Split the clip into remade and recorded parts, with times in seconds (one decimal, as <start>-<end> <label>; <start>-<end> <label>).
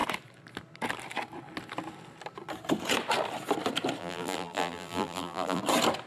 0.0-4.0 recorded; 4.0-5.6 remade; 5.6-6.1 recorded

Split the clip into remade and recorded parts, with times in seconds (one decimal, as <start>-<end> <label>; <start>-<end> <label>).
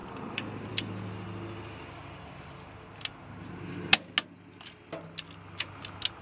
0.0-0.7 remade; 0.7-2.0 recorded; 2.0-3.5 remade; 3.5-6.2 recorded